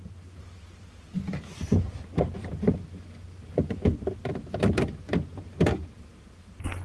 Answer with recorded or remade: recorded